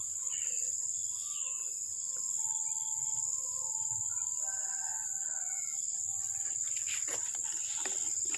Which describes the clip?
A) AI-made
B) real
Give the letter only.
B